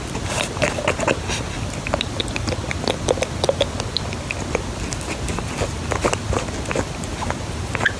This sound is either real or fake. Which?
real